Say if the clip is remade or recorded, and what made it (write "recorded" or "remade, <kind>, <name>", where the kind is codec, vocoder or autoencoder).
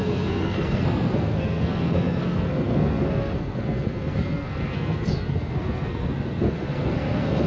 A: remade, codec, SNAC